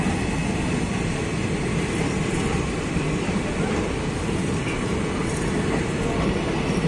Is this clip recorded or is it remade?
recorded